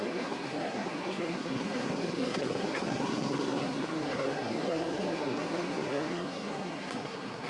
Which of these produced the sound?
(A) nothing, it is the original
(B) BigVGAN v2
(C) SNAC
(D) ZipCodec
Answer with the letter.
C